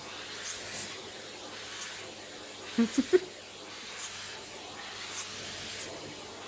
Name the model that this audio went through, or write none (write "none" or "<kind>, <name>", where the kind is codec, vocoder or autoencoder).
none